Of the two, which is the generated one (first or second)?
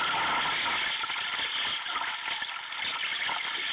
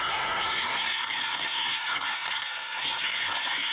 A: second